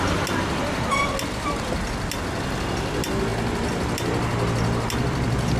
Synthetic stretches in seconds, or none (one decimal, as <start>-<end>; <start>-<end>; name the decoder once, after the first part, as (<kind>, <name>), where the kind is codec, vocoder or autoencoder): none